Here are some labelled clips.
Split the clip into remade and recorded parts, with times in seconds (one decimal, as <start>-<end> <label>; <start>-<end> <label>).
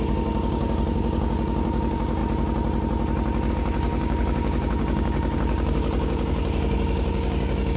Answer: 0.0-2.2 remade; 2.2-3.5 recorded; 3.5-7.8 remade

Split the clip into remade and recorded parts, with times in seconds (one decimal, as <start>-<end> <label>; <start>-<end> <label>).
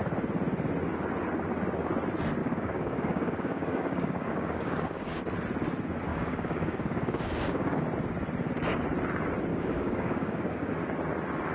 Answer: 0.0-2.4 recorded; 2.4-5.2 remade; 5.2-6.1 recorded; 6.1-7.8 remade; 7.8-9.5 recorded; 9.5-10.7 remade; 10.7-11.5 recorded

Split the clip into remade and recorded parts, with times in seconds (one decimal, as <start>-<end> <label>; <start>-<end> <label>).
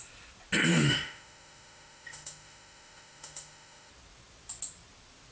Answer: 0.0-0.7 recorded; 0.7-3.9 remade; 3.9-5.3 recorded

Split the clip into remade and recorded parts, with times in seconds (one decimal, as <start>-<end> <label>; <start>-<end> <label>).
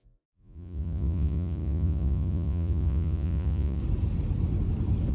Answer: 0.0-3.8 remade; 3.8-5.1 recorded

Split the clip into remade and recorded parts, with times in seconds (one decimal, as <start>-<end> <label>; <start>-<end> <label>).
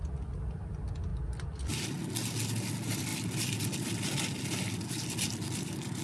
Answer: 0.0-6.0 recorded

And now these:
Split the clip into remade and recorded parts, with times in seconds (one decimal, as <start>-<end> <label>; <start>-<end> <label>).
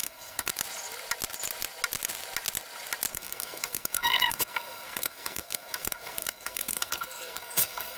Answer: 0.0-0.5 remade; 0.5-3.1 recorded; 3.1-8.0 remade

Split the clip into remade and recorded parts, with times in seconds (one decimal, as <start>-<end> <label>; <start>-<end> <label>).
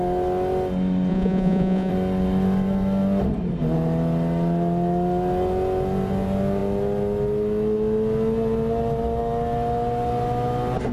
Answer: 0.0-1.1 recorded; 1.1-1.9 remade; 1.9-10.9 recorded